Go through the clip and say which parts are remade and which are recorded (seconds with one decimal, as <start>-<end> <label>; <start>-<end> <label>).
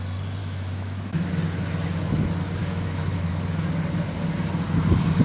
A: 0.0-0.4 recorded; 0.4-1.3 remade; 1.3-2.6 recorded; 2.6-3.3 remade; 3.3-5.2 recorded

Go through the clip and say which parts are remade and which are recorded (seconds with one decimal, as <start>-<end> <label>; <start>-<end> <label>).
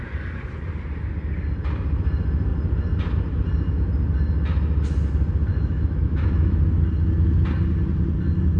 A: 0.0-5.5 recorded; 5.5-6.6 remade; 6.6-8.6 recorded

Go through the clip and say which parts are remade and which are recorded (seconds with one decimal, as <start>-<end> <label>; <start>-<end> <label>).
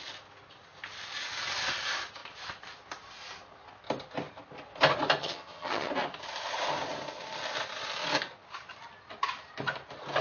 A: 0.0-5.2 recorded; 5.2-5.9 remade; 5.9-10.2 recorded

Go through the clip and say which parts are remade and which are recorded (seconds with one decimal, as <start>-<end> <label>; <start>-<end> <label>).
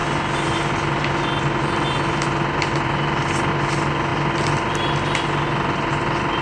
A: 0.0-6.4 recorded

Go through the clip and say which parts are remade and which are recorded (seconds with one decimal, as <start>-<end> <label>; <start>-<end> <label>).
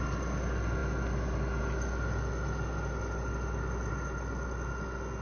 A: 0.0-5.2 recorded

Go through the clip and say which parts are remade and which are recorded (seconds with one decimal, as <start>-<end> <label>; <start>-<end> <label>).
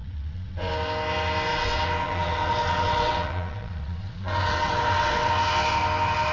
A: 0.0-0.7 remade; 0.7-1.5 recorded; 1.5-5.3 remade; 5.3-6.3 recorded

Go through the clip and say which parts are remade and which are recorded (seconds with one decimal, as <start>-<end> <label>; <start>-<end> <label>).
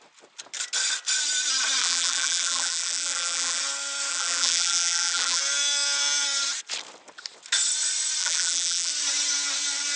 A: 0.0-1.8 recorded; 1.8-3.6 remade; 3.6-4.1 recorded; 4.1-5.4 remade; 5.4-8.2 recorded; 8.2-8.9 remade; 8.9-10.0 recorded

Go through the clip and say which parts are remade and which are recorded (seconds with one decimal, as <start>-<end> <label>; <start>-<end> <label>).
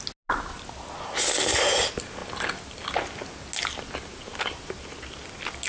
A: 0.0-5.7 recorded